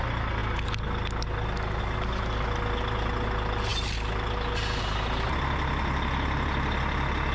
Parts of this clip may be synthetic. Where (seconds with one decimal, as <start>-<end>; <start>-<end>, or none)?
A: none

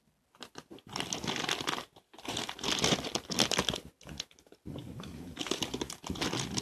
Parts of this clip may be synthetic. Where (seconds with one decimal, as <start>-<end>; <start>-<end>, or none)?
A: 4.8-5.6

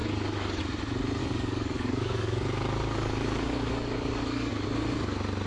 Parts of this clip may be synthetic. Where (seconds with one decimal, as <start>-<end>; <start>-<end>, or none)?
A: 0.0-0.6; 1.2-4.5

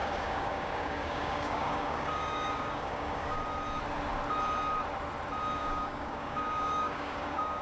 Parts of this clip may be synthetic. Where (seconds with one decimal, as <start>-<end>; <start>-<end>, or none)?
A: 0.0-3.4; 5.6-7.6

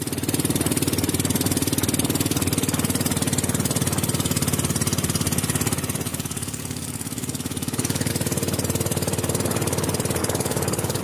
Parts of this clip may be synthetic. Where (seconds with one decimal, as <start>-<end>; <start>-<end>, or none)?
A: 6.1-8.1; 10.2-11.0